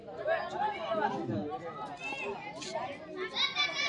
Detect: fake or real real